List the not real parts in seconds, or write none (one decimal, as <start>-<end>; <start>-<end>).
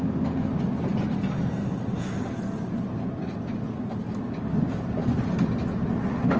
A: none